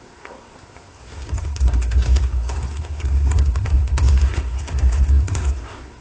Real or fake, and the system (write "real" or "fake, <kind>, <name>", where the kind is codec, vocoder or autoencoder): fake, codec, SNAC